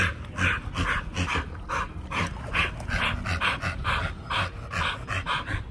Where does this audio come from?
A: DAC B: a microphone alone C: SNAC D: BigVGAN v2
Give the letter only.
B